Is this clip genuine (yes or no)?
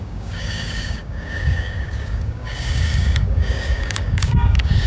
no